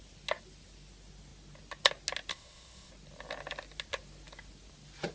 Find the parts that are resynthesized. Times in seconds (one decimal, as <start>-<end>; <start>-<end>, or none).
2.3-2.9